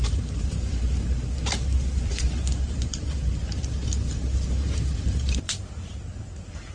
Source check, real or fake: fake